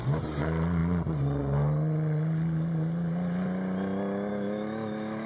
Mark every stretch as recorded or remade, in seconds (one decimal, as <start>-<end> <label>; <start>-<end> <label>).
0.0-4.3 recorded; 4.3-5.3 remade